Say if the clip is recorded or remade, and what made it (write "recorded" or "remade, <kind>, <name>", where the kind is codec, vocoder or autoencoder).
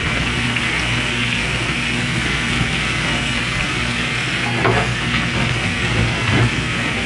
remade, codec, SNAC